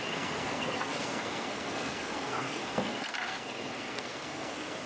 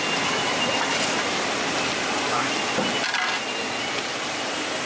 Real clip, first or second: second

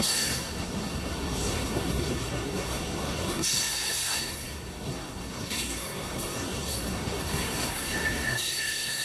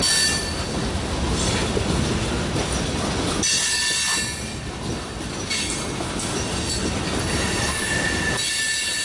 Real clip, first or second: second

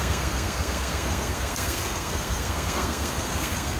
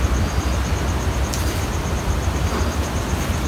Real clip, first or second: second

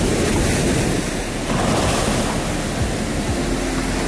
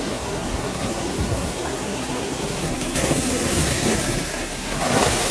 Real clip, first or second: first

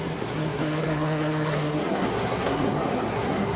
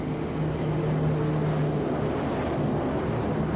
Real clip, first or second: second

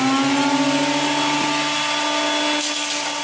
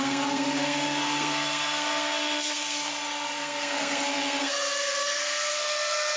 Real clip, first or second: first